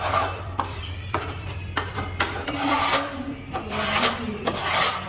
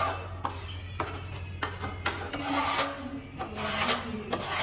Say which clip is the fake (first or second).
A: first